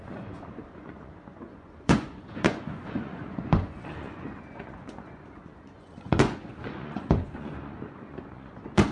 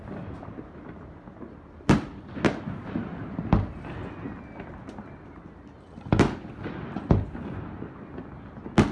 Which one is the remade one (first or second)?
first